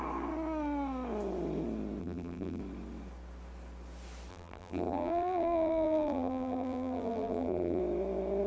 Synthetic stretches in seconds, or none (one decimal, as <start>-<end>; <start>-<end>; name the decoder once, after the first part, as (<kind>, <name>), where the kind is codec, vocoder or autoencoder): 2.0-2.6 (vocoder, BigVGAN v2); 4.3-7.8

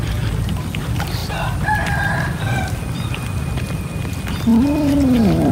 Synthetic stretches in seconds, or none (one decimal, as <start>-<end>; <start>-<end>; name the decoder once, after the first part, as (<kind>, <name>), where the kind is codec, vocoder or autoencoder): 1.2-3.1 (vocoder, BigVGAN v2)